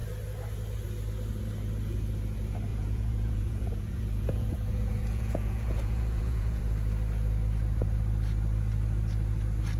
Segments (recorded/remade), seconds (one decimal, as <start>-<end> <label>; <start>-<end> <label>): 0.0-2.7 recorded; 2.7-6.6 remade; 6.6-9.8 recorded